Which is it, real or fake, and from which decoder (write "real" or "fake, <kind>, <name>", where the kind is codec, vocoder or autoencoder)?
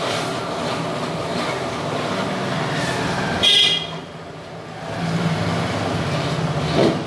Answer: real